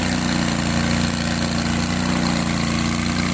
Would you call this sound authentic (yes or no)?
yes